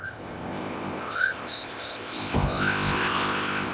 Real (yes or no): no